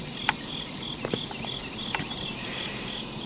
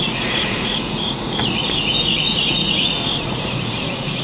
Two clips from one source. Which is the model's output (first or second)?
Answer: second